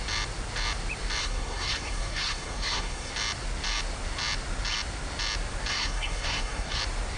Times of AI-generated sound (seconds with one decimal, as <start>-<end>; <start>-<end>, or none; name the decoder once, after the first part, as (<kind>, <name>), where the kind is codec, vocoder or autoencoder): 1.2-3.1 (codec, SNAC); 5.7-6.8